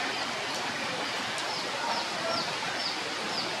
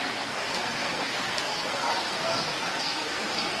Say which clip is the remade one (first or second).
second